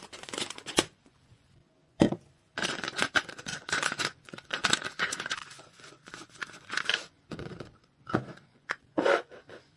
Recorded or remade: remade